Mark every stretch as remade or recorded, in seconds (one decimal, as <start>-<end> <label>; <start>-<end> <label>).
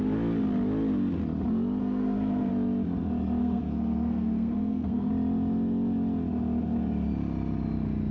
0.0-1.8 recorded; 1.8-2.5 remade; 2.5-3.4 recorded; 3.4-5.1 remade; 5.1-8.1 recorded